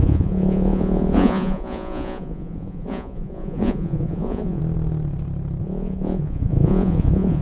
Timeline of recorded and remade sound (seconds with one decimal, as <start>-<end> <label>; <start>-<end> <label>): 0.0-4.6 remade; 4.6-5.6 recorded; 5.6-7.4 remade

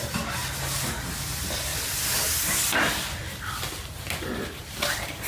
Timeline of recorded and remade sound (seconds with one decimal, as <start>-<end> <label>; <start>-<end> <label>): 0.0-1.7 recorded; 1.7-5.3 remade

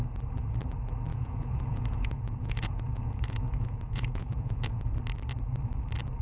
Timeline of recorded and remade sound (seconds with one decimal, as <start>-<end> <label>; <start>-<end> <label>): 0.0-1.1 recorded; 1.1-4.8 remade; 4.8-6.2 recorded

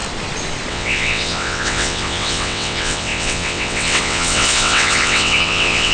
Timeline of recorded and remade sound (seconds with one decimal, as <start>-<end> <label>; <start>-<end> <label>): 0.0-0.7 recorded; 0.7-5.9 remade

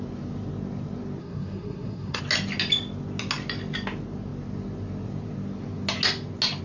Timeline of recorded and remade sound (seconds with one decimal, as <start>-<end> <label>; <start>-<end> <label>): 0.0-1.2 recorded; 1.2-2.2 remade; 2.2-6.6 recorded

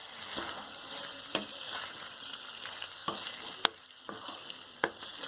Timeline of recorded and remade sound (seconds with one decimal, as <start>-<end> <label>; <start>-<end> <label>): 0.0-5.3 recorded

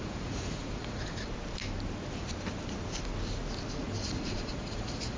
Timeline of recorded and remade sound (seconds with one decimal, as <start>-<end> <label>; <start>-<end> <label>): 0.0-1.3 remade; 1.3-4.0 recorded; 4.0-5.2 remade